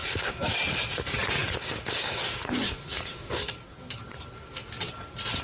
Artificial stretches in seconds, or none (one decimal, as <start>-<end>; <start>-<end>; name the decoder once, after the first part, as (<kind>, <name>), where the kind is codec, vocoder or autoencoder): 0.0-0.6 (codec, DAC); 1.4-4.1